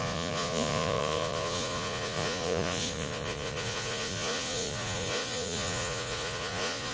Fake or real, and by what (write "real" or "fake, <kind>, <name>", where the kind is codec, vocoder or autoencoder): fake, vocoder, Vocos